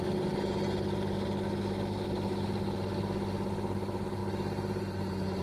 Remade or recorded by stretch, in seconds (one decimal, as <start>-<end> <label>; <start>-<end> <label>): 0.0-5.4 recorded